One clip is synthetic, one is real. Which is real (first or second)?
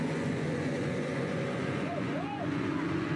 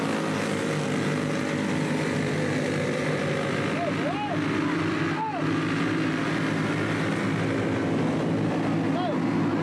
second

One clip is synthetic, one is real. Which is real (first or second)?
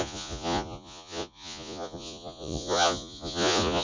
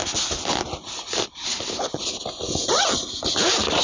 second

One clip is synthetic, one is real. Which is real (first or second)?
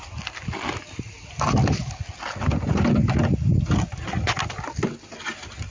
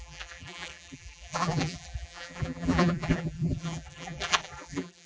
first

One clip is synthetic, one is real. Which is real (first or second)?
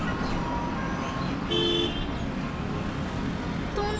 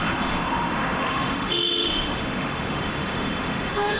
first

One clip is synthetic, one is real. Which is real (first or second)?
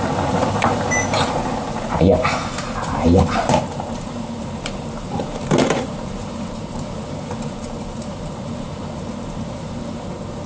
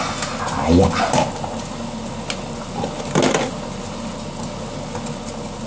second